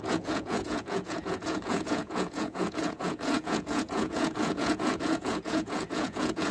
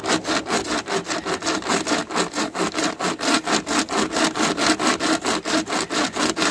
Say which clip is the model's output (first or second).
first